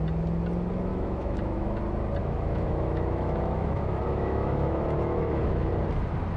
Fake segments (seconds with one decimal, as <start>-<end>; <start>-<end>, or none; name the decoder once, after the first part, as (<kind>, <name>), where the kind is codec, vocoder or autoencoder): 0.9-1.8 (autoencoder, DAC-VAE); 2.2-5.7